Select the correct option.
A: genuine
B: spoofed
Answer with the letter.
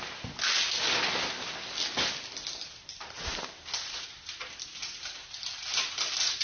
A